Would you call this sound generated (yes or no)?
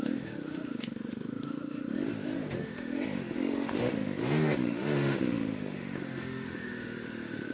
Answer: yes